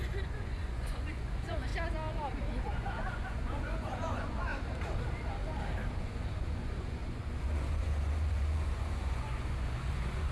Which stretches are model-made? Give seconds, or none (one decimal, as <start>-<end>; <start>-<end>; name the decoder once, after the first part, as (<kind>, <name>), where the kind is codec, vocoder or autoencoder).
0.0-1.7 (vocoder, Vocos); 2.6-4.5; 6.0-10.3